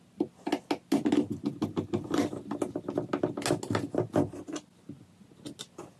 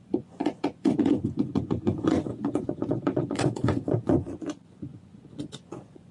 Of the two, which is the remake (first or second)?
second